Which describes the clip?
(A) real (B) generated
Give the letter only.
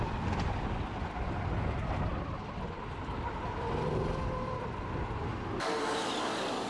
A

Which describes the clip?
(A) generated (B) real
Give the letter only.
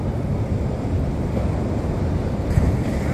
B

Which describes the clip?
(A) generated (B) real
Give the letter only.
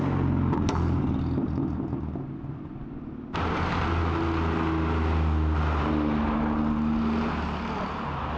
B